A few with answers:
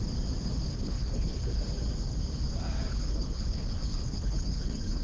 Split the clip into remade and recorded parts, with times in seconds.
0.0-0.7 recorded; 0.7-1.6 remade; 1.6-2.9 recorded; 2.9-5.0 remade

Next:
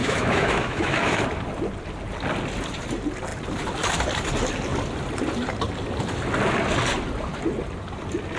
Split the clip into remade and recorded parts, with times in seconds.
0.0-1.2 remade; 1.2-8.4 recorded

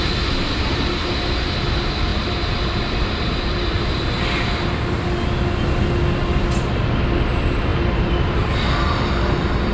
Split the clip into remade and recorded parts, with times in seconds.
0.0-2.1 recorded; 2.1-3.9 remade; 3.9-7.7 recorded; 7.7-9.0 remade; 9.0-9.7 recorded